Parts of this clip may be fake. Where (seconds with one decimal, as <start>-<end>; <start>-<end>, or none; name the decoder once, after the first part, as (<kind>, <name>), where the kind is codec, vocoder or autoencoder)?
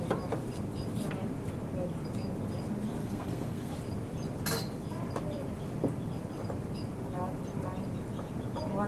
3.0-3.7 (codec, SNAC)